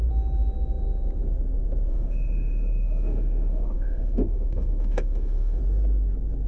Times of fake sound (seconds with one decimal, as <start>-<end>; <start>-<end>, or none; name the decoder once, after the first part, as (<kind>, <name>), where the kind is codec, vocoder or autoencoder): 1.9-5.6 (autoencoder, DAC-VAE)